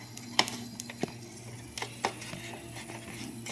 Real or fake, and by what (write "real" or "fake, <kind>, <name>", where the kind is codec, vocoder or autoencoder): real